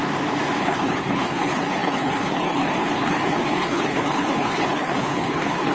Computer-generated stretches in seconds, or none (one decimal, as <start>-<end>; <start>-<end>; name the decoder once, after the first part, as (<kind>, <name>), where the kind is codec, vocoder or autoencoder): 0.6-5.7 (codec, HILCodec)